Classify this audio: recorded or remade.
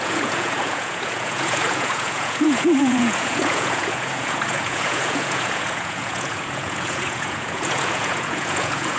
remade